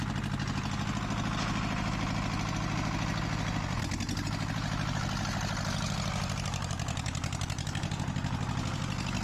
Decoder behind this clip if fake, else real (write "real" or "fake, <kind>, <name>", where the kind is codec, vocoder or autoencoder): real